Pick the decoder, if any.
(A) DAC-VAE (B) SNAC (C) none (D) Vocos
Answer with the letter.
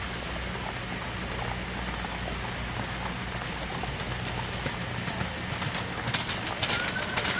C